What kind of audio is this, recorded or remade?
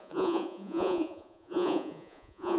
remade